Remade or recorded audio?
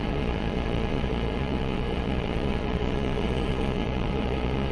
remade